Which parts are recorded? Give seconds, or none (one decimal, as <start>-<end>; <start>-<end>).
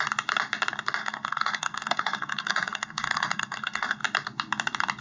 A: 0.0-1.0; 4.0-5.0